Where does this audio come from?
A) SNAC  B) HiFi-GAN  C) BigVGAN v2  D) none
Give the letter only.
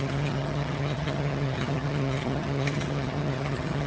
B